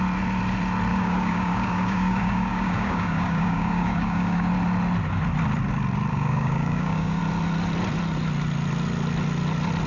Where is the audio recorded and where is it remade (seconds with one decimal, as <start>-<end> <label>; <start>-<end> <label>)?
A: 0.0-0.9 recorded; 0.9-4.5 remade; 4.5-6.1 recorded; 6.1-7.2 remade; 7.2-9.9 recorded